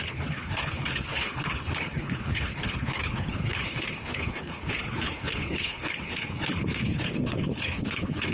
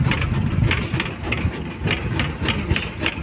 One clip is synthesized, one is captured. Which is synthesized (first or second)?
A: first